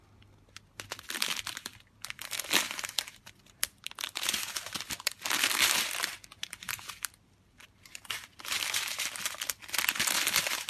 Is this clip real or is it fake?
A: real